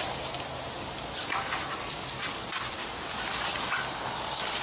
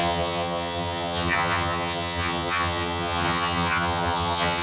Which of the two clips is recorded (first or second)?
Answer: first